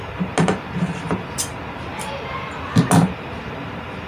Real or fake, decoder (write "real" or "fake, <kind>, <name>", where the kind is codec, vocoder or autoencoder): real